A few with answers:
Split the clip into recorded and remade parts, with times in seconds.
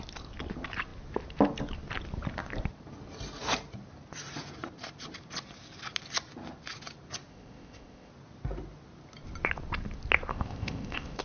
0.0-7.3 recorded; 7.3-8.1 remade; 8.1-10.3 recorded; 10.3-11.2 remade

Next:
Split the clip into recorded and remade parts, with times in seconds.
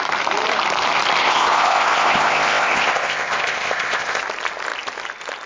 0.0-1.2 recorded; 1.2-4.2 remade; 4.2-5.5 recorded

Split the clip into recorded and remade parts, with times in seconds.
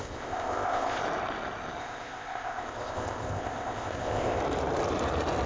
0.0-1.0 remade; 1.0-1.8 recorded; 1.8-4.4 remade; 4.4-5.5 recorded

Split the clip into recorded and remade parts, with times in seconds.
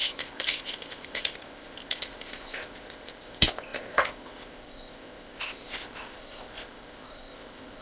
0.0-7.8 remade